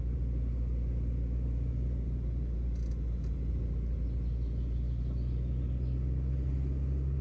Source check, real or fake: real